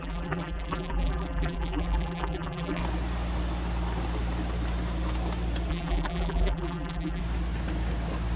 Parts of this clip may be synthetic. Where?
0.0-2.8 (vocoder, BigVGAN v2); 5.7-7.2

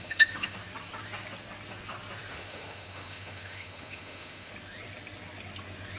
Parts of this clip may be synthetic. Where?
0.0-0.6 (autoencoder, DAC-VAE); 2.3-4.5

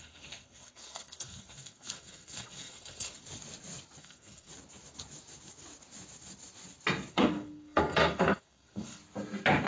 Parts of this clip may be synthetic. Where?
0.0-3.2 (codec, SNAC); 4.0-4.5; 7.1-9.0

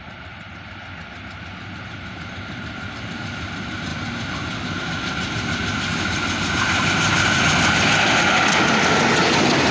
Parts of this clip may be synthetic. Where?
none

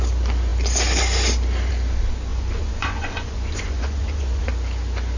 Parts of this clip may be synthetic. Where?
2.3-4.5 (vocoder, Vocos)

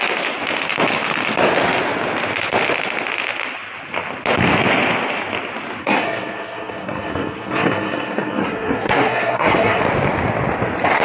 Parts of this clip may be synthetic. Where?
5.8-9.8 (codec, SNAC)

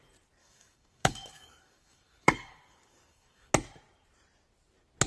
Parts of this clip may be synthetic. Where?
0.4-3.5 (codec, DAC)